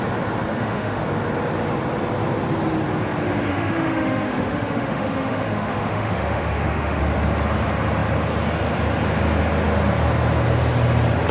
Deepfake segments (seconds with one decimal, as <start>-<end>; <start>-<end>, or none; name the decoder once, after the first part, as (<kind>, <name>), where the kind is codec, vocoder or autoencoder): 0.5-1.0 (autoencoder, DAC-VAE); 3.5-7.0